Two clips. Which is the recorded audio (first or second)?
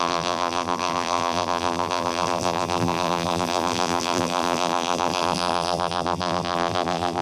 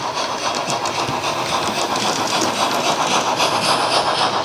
second